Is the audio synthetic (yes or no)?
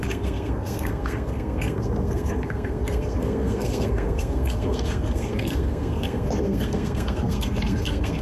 yes